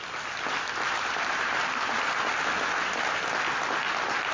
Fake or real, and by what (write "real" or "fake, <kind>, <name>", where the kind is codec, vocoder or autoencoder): real